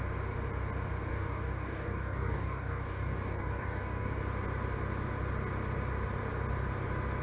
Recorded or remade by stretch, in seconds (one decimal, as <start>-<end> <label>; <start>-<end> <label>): 0.0-1.1 recorded; 1.1-4.1 remade; 4.1-7.2 recorded